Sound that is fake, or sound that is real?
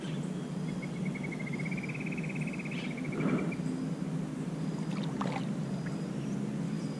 real